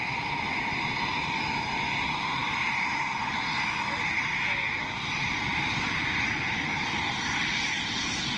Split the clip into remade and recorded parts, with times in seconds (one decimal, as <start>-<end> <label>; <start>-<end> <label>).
0.0-8.4 recorded